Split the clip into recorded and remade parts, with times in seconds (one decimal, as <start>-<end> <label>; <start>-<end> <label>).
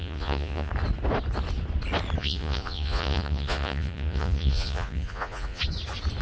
0.0-0.7 remade; 0.7-2.2 recorded; 2.2-5.6 remade; 5.6-6.2 recorded